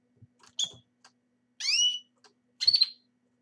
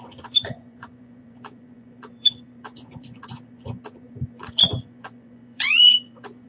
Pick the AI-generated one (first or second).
second